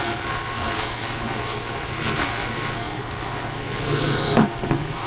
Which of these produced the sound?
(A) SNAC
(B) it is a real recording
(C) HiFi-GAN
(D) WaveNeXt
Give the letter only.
A